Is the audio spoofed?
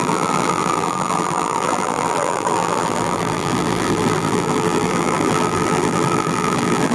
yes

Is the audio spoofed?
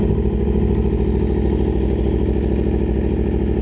no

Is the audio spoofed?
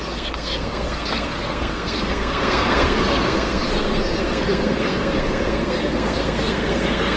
yes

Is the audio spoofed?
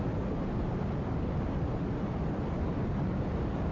no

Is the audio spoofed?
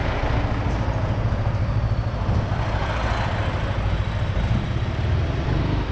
no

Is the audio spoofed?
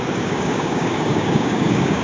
yes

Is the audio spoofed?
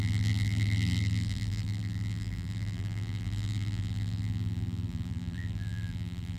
yes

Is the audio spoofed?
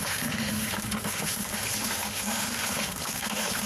yes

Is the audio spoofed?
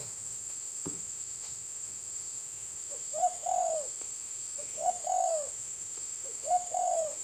yes